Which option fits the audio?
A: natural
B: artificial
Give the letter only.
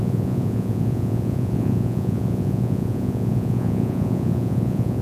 B